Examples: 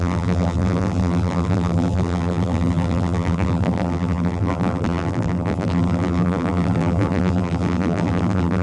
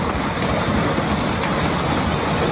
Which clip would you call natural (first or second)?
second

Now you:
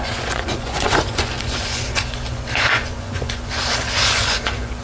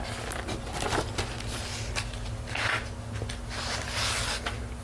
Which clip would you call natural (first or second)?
second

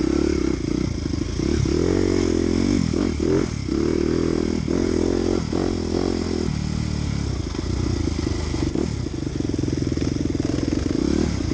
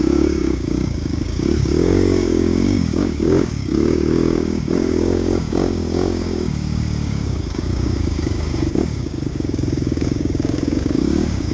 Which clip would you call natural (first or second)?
first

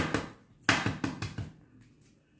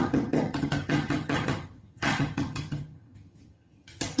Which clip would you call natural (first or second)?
first